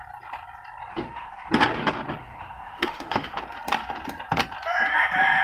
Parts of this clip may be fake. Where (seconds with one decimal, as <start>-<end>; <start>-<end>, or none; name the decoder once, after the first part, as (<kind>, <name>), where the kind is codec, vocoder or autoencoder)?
0.9-1.5 (autoencoder, DAC-VAE); 2.2-3.4